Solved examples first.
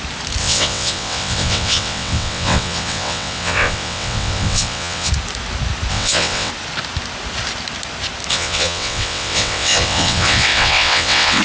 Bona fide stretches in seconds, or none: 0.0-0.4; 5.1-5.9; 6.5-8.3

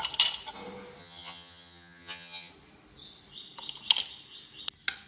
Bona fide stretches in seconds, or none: 0.0-1.0; 2.5-5.1

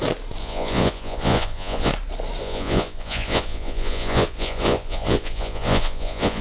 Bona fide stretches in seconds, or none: 0.0-0.4; 1.9-2.4

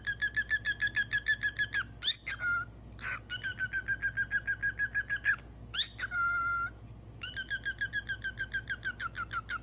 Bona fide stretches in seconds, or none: 0.0-9.6